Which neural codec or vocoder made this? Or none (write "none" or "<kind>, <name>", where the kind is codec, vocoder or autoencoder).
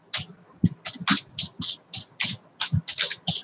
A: none